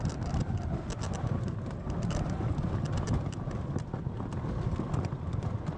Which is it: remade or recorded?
recorded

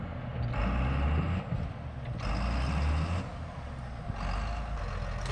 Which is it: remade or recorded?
recorded